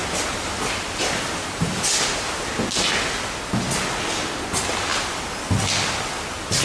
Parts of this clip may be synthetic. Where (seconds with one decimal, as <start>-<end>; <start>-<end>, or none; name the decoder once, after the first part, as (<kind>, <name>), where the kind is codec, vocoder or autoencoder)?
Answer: 0.0-1.8 (vocoder, BigVGAN v2)